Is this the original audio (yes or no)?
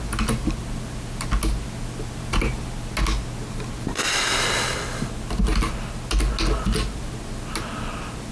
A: yes